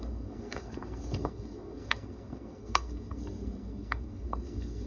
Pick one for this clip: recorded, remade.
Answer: remade